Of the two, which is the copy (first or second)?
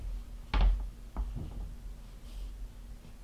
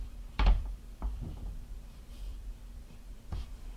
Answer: second